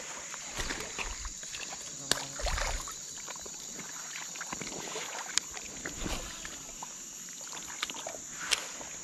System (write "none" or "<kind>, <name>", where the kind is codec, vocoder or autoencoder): none